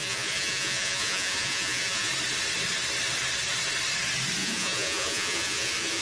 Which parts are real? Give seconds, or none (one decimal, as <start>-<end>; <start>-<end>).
2.1-4.4